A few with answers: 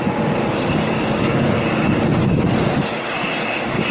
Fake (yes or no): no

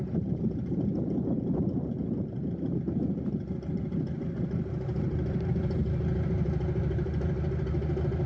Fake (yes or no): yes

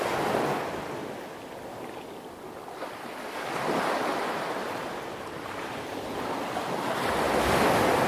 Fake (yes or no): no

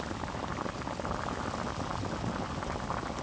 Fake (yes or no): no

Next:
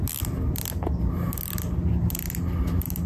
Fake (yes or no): no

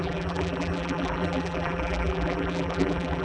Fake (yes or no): yes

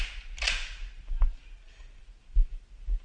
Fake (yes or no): no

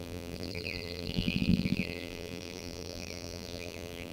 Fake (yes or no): yes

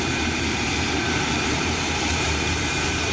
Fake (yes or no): yes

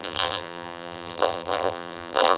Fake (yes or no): yes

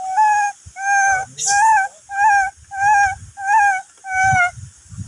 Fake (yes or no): no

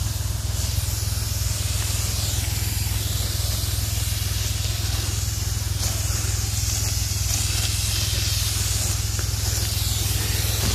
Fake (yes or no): no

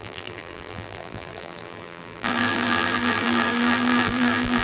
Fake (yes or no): yes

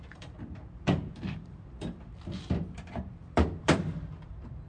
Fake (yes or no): yes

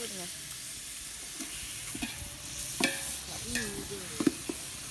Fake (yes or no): no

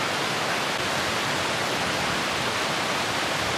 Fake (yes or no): no